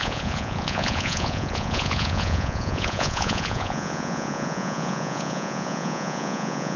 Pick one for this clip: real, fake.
fake